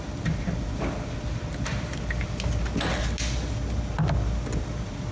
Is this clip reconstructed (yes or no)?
no